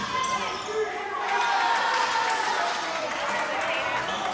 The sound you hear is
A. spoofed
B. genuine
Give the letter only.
B